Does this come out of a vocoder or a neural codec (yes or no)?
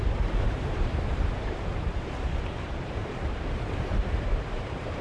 yes